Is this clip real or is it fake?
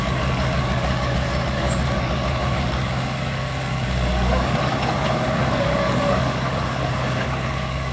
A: fake